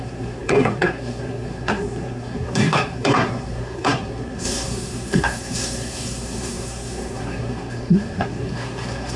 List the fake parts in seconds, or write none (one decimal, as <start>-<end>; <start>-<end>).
0.0-9.2